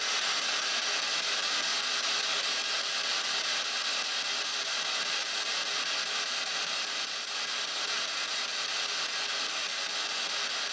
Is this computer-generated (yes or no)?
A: no